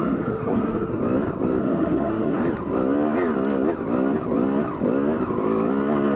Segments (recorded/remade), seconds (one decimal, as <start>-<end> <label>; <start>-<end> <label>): 0.0-1.0 remade; 1.0-1.6 recorded; 1.6-2.4 remade; 2.4-6.2 recorded